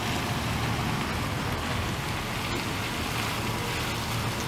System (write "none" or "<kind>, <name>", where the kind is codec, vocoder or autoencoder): none